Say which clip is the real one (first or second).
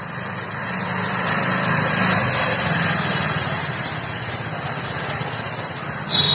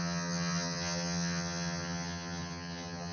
first